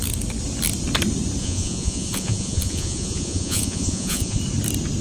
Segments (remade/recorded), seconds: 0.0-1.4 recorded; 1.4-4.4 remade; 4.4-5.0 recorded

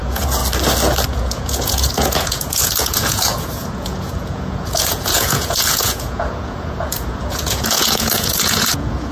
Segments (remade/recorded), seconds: 0.0-0.4 remade; 0.4-1.1 recorded; 1.1-9.1 remade

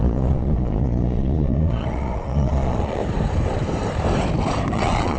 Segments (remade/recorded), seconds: 0.0-3.0 remade; 3.0-4.7 recorded; 4.7-5.2 remade

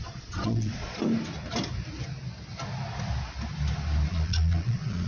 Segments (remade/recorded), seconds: 0.0-1.0 remade; 1.0-4.1 recorded; 4.1-5.1 remade

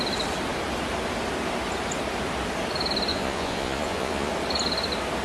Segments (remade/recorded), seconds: 0.0-3.1 recorded; 3.1-4.3 remade; 4.3-5.2 recorded

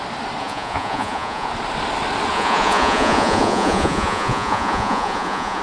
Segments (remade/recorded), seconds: 0.0-0.4 recorded; 0.4-1.5 remade; 1.5-2.3 recorded; 2.3-5.6 remade